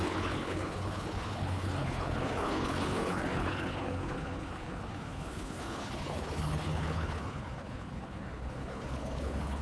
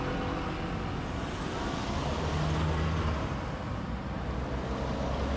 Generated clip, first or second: first